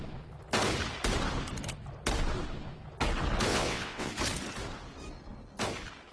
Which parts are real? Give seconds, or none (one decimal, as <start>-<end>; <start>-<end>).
0.0-3.5; 4.1-6.1